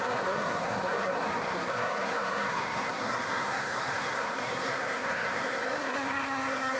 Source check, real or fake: fake